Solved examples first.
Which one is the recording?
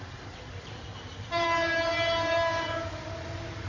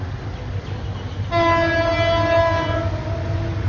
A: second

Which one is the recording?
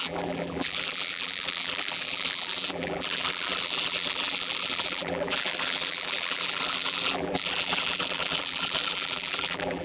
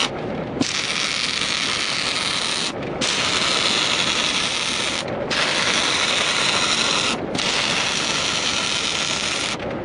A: second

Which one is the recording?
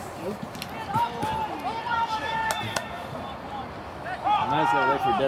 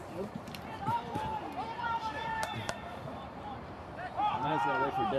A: first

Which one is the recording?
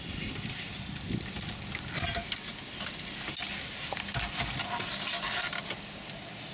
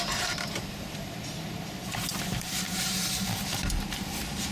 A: first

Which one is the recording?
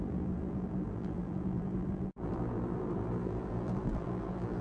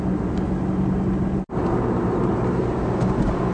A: second